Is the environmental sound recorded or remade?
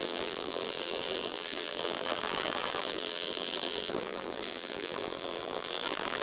remade